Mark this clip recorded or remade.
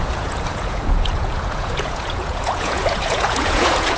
remade